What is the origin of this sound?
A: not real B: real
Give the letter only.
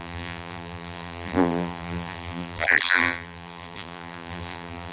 A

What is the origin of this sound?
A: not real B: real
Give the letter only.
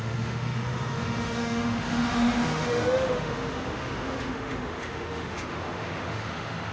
A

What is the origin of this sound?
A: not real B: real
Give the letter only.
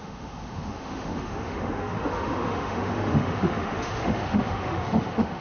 A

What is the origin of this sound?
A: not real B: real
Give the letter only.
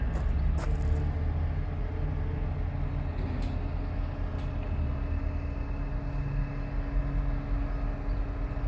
B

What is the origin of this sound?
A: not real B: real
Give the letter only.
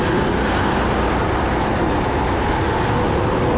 B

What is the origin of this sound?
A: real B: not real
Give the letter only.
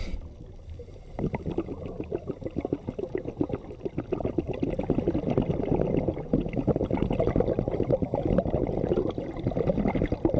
A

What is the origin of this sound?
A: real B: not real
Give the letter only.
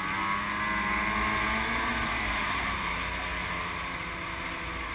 A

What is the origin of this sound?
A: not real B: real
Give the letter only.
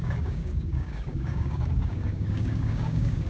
A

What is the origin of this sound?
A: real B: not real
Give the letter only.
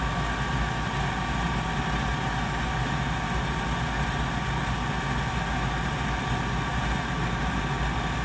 A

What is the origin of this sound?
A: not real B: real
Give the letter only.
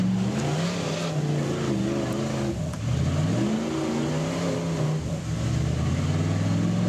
B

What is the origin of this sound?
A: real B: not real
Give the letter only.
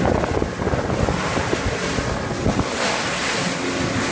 A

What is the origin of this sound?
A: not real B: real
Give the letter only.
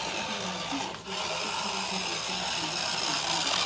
B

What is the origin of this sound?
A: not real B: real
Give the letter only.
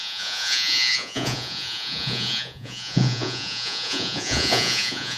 A